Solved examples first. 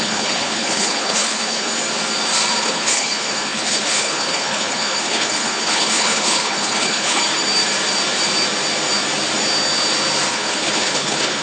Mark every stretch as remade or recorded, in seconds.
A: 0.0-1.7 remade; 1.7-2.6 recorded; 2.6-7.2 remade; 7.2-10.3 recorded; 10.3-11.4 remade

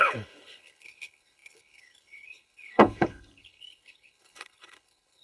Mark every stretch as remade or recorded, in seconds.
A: 0.0-5.2 remade

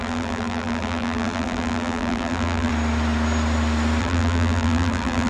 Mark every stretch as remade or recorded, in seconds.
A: 0.0-2.7 remade; 2.7-4.0 recorded; 4.0-5.3 remade

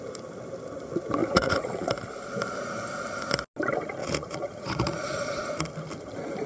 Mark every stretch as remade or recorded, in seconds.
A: 0.0-1.2 recorded; 1.2-1.9 remade; 1.9-4.0 recorded; 4.0-5.5 remade; 5.5-6.5 recorded